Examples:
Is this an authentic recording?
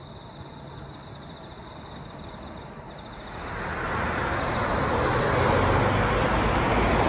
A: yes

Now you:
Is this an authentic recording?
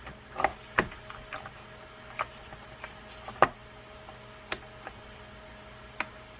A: yes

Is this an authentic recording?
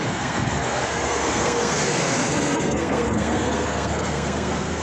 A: no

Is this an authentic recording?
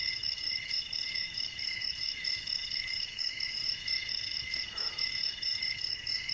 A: no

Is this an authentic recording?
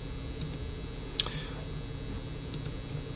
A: yes